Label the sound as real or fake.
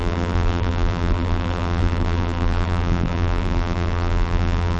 fake